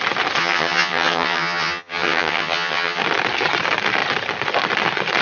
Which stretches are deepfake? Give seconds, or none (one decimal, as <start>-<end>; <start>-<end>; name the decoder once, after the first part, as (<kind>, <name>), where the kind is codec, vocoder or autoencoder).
0.4-3.0 (vocoder, HiFi-GAN)